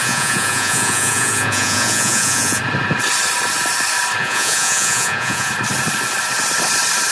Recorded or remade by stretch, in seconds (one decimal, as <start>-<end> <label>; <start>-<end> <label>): 0.0-2.6 remade; 2.6-4.2 recorded; 4.2-5.5 remade; 5.5-7.1 recorded